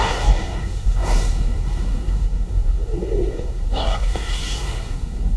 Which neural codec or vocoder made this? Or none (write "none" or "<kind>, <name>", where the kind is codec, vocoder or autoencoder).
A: codec, SNAC